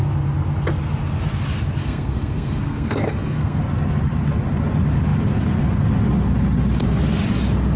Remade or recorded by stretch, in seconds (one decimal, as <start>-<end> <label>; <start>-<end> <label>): 0.0-1.8 recorded; 1.8-3.6 remade; 3.6-7.8 recorded